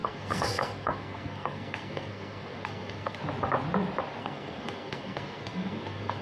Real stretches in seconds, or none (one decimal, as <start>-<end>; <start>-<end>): 3.2-4.2